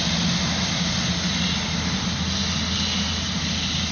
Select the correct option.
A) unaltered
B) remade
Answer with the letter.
A